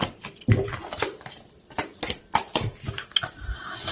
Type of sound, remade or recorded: remade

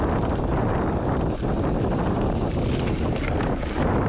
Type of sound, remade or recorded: recorded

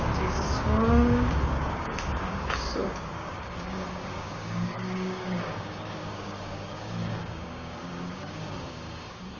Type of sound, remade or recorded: remade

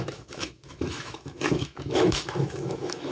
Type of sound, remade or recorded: remade